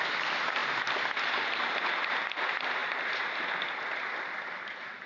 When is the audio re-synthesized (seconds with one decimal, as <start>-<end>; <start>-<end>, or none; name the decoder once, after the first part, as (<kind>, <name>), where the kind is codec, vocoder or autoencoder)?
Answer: 2.8-4.0 (vocoder, BigVGAN v2)